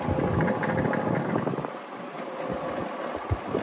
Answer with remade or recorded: recorded